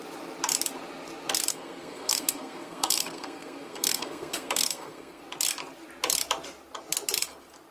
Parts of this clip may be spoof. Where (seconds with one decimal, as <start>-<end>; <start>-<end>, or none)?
1.5-5.2